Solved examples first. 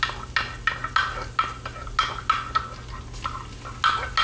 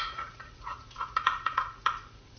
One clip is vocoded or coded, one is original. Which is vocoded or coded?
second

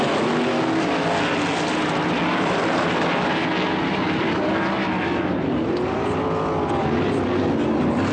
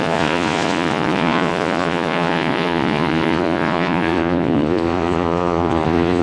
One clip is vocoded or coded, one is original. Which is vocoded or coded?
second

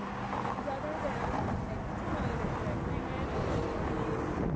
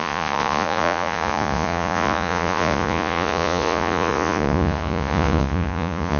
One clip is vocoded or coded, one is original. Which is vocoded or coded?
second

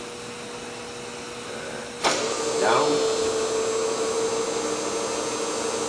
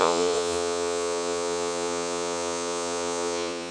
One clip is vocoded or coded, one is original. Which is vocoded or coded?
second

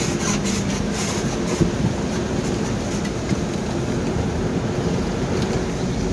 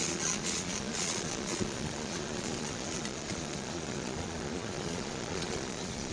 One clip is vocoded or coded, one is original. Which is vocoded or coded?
second